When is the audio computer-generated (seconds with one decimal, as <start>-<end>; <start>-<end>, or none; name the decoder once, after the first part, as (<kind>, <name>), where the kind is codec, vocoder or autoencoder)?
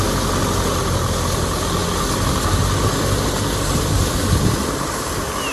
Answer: none